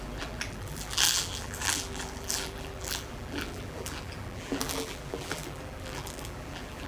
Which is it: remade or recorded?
remade